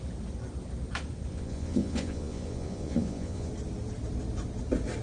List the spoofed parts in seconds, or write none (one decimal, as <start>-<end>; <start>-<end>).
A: 1.3-3.5